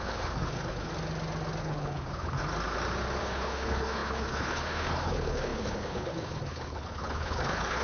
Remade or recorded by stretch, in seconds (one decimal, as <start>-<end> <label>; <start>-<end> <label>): 0.0-0.9 remade; 0.9-1.6 recorded; 1.6-2.4 remade; 2.4-3.2 recorded; 3.2-7.8 remade